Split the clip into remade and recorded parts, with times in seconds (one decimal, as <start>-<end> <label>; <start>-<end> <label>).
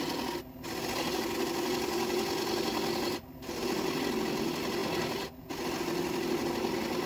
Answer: 0.0-7.1 recorded